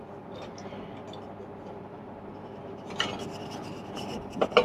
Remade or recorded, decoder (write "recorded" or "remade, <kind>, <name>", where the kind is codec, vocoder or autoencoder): recorded